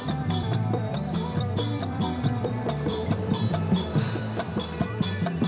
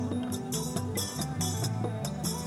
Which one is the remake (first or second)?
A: first